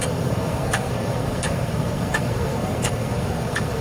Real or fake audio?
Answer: fake